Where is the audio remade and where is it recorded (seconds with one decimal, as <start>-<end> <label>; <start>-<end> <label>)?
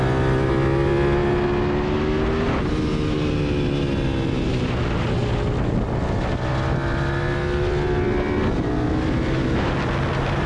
0.0-10.5 recorded